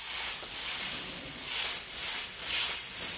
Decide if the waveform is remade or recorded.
recorded